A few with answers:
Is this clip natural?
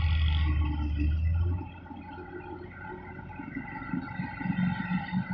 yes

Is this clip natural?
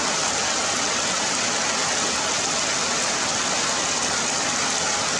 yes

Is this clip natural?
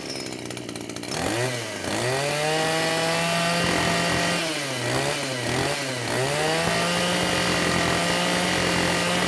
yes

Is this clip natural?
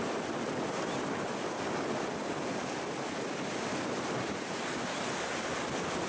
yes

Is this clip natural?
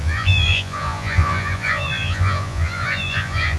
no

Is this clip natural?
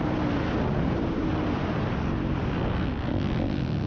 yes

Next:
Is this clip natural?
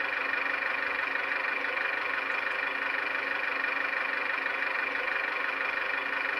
yes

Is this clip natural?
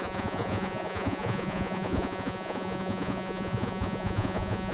no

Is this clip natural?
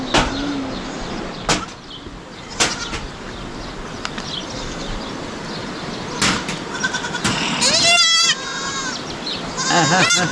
yes